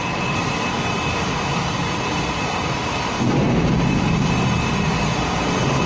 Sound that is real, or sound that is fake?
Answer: real